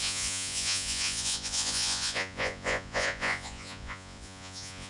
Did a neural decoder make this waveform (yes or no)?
yes